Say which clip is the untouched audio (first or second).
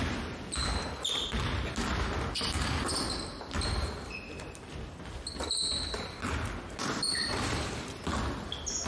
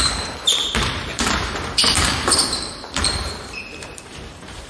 first